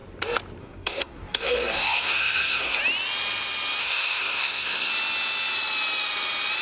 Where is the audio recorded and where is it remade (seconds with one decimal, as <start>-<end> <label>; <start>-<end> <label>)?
0.0-0.6 recorded; 0.6-2.8 remade; 2.8-3.8 recorded; 3.8-4.9 remade; 4.9-6.6 recorded